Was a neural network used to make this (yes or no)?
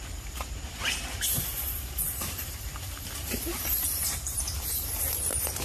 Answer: yes